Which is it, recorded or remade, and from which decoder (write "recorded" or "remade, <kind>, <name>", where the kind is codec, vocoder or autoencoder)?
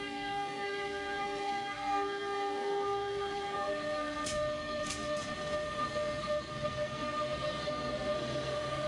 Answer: remade, codec, SNAC